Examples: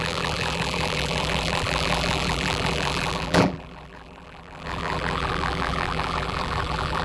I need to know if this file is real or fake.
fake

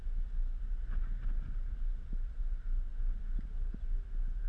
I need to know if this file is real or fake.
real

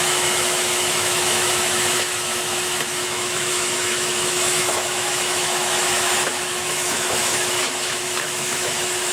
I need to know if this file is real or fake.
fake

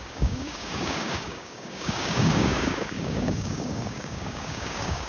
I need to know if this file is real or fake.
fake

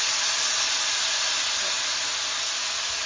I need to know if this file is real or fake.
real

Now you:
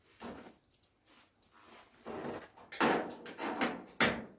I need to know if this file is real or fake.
real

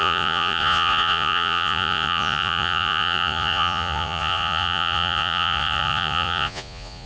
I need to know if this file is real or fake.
fake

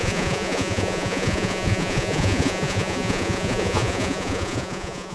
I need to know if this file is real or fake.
fake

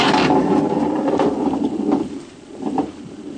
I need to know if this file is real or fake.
fake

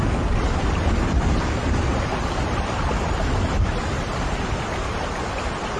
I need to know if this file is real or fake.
real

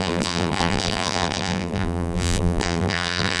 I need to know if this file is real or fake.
fake